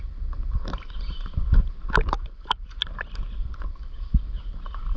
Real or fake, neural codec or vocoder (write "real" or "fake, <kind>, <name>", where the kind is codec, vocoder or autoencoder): real